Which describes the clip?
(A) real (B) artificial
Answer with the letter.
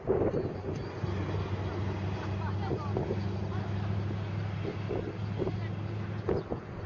A